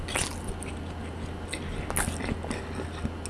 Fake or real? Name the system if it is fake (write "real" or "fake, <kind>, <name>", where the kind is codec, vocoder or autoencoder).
real